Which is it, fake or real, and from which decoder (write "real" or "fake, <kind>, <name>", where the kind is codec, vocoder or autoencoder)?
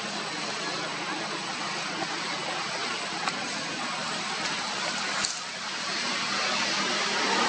real